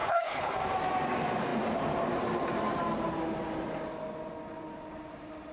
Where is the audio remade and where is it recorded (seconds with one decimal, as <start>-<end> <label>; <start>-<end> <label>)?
0.0-0.6 remade; 0.6-5.5 recorded

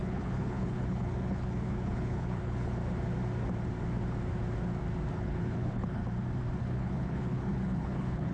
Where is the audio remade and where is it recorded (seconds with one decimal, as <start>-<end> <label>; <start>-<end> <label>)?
0.0-2.8 remade; 2.8-5.1 recorded; 5.1-6.0 remade; 6.0-6.6 recorded; 6.6-8.3 remade

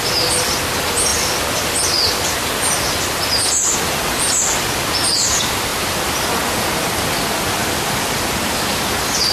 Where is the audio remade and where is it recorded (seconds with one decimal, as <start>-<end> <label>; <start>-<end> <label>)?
0.0-7.6 recorded; 7.6-8.7 remade; 8.7-9.3 recorded